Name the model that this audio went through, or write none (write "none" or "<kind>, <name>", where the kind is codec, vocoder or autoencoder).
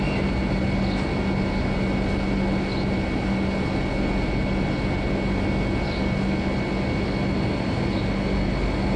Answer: none